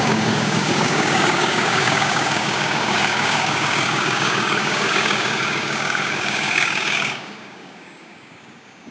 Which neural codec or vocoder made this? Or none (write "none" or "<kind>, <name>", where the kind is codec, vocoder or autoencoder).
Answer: codec, DAC